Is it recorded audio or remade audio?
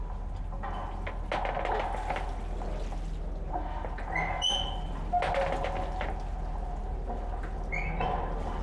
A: recorded